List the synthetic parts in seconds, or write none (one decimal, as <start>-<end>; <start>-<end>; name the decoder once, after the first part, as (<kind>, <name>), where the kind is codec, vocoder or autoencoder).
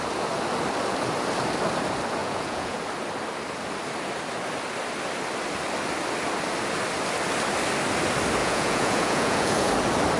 2.2-2.8 (vocoder, Vocos); 8.4-9.7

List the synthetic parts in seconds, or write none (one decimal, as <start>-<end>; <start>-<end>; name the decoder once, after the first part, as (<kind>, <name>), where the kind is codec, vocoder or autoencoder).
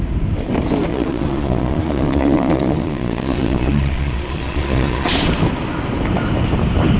0.9-5.1 (vocoder, Vocos)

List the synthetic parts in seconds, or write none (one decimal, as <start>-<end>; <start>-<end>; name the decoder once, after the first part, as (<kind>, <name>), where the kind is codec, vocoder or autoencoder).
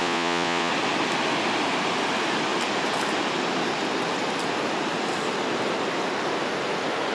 0.0-0.7 (vocoder, Vocos)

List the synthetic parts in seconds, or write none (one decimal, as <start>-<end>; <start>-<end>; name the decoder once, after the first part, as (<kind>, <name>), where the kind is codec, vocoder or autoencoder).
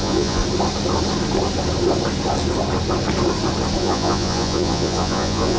0.0-0.4 (vocoder, Vocos); 3.8-5.6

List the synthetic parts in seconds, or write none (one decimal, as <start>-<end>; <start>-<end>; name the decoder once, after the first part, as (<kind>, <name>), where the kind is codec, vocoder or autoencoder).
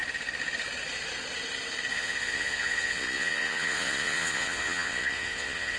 1.9-5.8 (vocoder, Vocos)